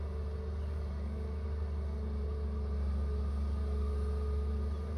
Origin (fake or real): real